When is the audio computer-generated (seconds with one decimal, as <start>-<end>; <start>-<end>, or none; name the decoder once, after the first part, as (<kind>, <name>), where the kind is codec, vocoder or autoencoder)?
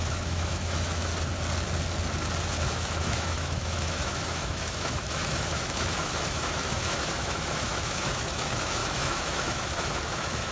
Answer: 0.0-1.1 (autoencoder, DAC-VAE); 2.5-10.5